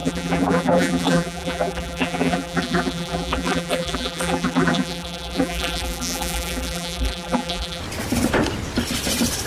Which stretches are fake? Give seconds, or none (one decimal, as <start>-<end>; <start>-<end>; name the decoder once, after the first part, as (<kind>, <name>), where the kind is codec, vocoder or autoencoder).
0.0-7.8 (vocoder, BigVGAN v2)